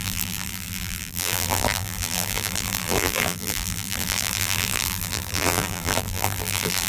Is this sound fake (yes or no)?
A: yes